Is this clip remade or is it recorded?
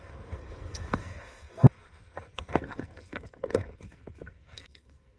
remade